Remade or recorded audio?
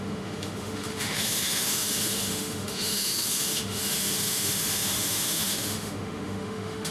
remade